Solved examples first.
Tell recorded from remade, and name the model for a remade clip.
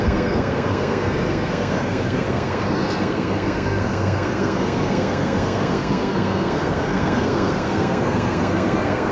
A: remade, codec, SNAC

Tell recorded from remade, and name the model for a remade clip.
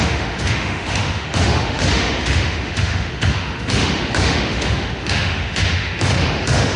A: remade, autoencoder, DAC-VAE